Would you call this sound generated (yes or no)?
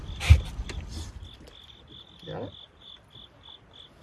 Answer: no